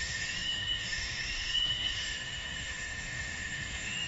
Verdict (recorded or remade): remade